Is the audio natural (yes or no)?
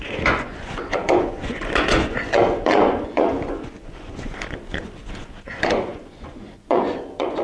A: no